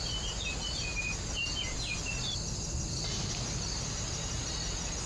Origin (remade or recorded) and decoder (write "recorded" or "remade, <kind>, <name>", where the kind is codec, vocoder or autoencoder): recorded